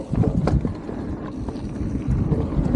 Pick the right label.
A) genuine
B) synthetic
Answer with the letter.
A